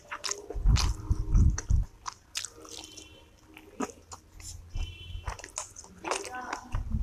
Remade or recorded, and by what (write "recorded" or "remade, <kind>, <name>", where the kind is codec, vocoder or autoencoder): recorded